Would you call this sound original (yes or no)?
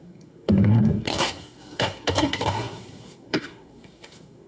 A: no